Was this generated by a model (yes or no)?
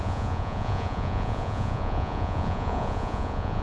yes